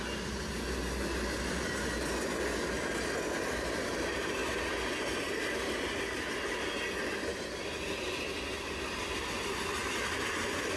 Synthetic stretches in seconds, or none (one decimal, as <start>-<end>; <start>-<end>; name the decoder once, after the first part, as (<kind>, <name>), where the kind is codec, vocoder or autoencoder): none